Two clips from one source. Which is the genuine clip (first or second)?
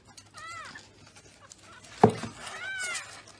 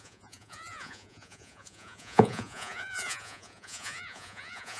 first